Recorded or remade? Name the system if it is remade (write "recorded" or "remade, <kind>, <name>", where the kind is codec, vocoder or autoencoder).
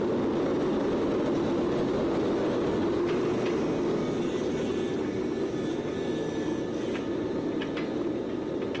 recorded